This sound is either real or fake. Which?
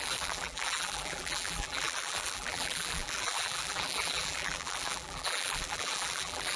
fake